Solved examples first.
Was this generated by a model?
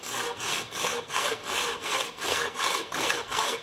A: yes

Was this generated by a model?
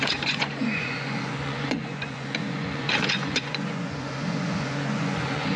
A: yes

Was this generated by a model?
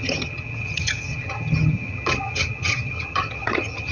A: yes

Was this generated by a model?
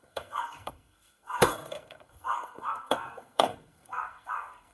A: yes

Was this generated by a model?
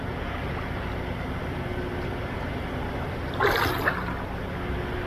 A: no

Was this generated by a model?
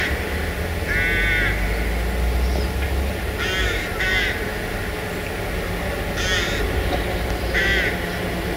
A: no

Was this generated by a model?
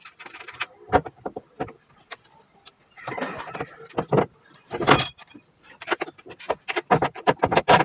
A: no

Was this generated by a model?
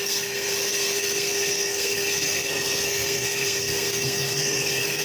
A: yes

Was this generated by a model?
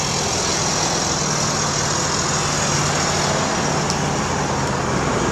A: no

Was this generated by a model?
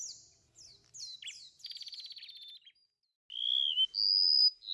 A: no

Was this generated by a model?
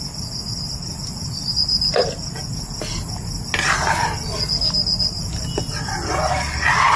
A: no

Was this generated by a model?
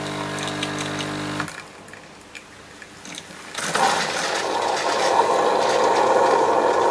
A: no